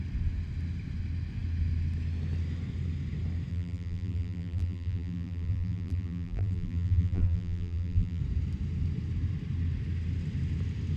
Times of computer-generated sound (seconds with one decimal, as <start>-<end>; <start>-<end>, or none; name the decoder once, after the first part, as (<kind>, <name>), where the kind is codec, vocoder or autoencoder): 3.5-8.2 (vocoder, BigVGAN v2)